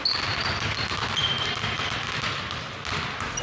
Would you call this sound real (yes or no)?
yes